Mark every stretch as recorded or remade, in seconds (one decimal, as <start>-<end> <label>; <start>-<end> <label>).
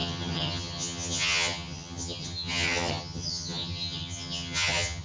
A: 0.0-5.0 remade